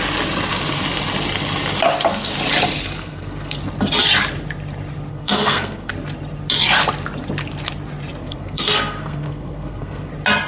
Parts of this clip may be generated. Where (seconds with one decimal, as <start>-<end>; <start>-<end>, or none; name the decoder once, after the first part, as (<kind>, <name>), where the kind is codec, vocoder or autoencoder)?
3.0-3.6 (codec, SNAC); 5.1-5.9; 8.2-10.1